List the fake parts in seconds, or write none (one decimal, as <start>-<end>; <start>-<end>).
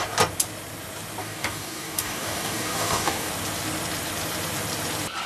1.2-3.3